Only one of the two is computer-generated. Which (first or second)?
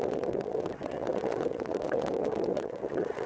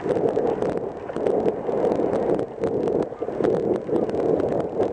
first